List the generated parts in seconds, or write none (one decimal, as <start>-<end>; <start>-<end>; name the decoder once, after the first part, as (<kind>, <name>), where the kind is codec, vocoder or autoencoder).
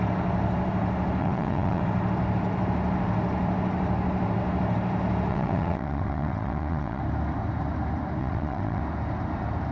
1.2-1.8 (vocoder, WaveNeXt); 5.3-7.0; 8.2-8.8